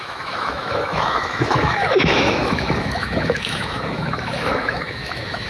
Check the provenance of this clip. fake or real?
fake